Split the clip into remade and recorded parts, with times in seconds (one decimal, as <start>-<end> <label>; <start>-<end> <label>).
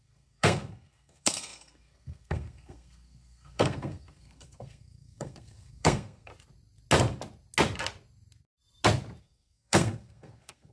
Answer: 0.0-6.3 remade; 6.3-9.2 recorded; 9.2-10.7 remade